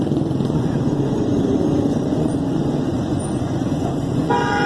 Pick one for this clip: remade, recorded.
remade